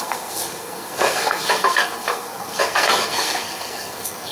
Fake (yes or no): yes